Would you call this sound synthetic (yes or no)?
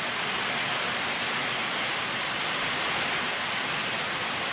no